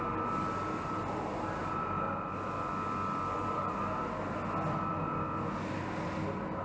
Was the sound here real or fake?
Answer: real